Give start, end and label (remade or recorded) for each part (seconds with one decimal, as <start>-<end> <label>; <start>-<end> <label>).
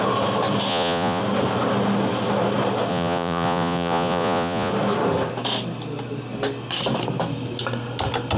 0.0-0.7 recorded; 0.7-1.2 remade; 1.2-2.9 recorded; 2.9-4.7 remade; 4.7-8.4 recorded